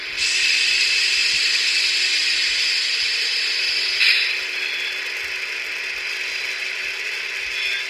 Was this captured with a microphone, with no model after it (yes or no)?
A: yes